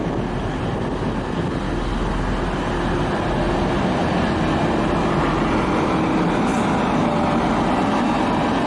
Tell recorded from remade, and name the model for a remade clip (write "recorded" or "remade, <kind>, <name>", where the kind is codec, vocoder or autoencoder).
recorded